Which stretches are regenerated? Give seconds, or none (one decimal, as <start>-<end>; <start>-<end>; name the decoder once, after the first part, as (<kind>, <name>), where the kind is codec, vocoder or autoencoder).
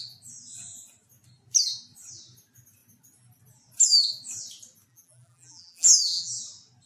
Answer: 4.9-6.4 (vocoder, BigVGAN v2)